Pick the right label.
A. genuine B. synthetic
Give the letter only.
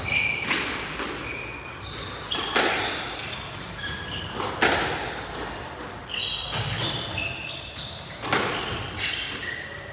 A